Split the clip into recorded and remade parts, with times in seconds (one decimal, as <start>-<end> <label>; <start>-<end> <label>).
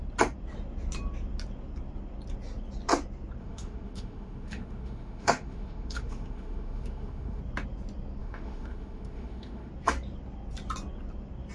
0.0-3.4 recorded; 3.4-7.4 remade; 7.4-8.2 recorded; 8.2-9.7 remade; 9.7-11.5 recorded